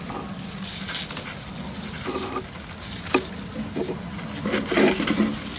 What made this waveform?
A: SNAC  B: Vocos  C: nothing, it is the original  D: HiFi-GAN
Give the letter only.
C